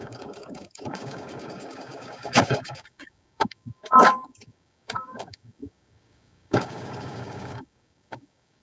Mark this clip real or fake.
fake